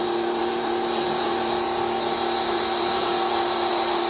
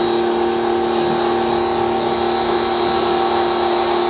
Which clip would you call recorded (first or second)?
second